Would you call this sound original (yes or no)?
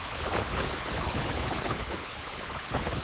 no